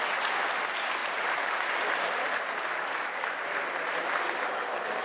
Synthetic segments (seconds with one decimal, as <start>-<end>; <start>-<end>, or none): none